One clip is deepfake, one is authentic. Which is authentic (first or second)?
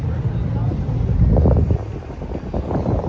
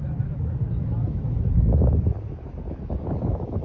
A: first